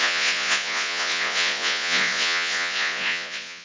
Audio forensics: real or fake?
fake